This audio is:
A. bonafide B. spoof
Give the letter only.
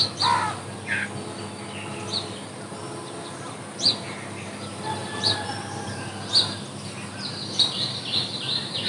B